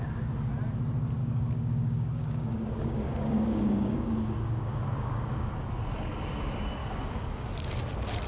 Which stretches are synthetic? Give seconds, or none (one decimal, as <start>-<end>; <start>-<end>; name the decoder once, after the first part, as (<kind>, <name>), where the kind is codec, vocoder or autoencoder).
1.2-5.5 (codec, DAC); 6.8-7.5